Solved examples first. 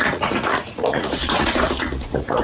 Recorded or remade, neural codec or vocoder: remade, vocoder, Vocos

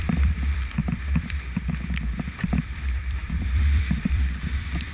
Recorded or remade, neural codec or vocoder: remade, vocoder, BigVGAN v2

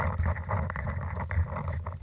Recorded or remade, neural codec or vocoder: recorded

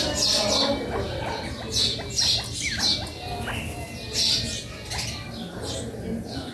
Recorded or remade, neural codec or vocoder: recorded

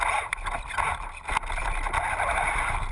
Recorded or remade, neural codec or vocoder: recorded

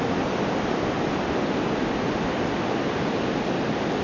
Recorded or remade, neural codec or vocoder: recorded